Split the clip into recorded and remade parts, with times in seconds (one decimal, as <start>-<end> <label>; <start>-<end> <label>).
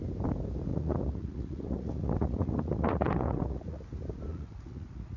0.0-0.7 recorded; 0.7-3.8 remade; 3.8-4.3 recorded; 4.3-5.2 remade